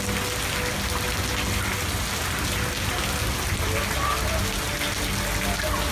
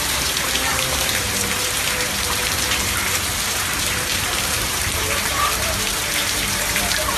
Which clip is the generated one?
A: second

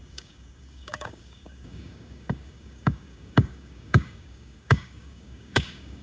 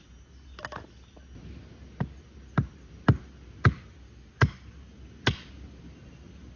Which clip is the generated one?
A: first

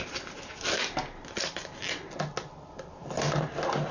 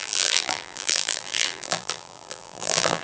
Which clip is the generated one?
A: second